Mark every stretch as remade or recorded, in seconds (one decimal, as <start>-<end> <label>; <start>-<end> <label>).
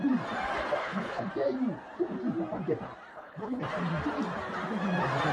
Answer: 0.0-0.8 recorded; 0.8-1.3 remade; 1.3-3.1 recorded; 3.1-3.6 remade; 3.6-5.3 recorded